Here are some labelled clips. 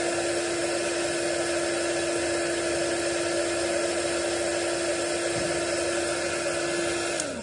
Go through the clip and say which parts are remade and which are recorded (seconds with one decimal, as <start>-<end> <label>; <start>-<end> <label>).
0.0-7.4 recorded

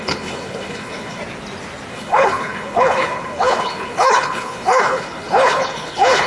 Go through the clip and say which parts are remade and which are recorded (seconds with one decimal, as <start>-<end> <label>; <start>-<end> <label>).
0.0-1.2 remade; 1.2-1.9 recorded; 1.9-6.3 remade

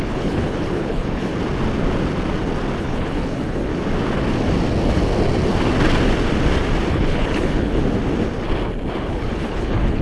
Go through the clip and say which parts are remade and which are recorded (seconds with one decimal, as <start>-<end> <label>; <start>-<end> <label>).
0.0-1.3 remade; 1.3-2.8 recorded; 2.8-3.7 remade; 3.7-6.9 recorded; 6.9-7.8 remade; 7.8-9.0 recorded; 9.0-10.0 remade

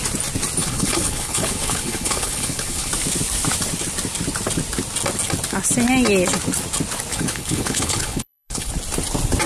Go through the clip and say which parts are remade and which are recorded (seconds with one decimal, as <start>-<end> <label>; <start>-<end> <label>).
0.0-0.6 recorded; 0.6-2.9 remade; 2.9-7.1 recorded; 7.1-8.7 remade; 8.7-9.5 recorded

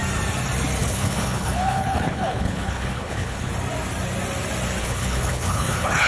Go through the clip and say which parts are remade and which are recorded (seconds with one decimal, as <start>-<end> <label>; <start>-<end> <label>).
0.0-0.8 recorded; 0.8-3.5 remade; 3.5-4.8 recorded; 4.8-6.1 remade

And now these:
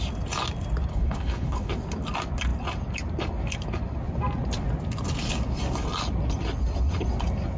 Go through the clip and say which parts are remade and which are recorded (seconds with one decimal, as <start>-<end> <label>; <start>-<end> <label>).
0.0-0.9 recorded; 0.9-1.7 remade; 1.7-7.6 recorded